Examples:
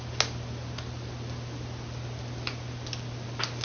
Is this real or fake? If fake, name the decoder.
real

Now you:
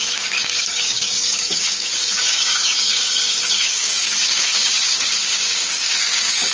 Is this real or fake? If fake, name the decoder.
fake, codec, DAC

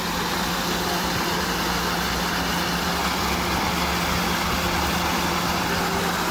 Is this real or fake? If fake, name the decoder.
real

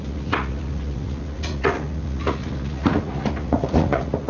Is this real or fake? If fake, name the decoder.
fake, vocoder, Vocos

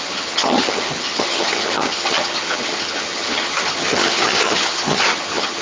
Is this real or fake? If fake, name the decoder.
fake, vocoder, HiFi-GAN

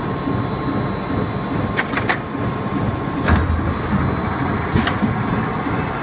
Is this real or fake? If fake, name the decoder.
real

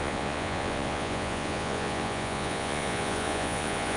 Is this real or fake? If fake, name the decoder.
fake, vocoder, Vocos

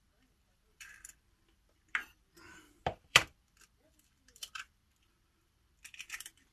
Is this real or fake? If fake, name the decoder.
fake, vocoder, BigVGAN v2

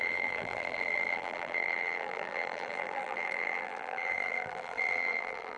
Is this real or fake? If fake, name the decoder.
fake, vocoder, BigVGAN v2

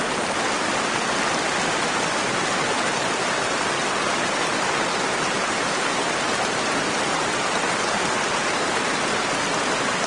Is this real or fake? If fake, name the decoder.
fake, vocoder, BigVGAN v2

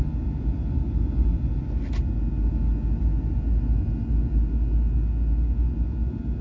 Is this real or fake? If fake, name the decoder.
real